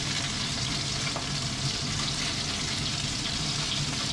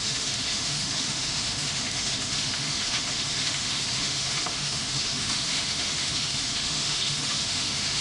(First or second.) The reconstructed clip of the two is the second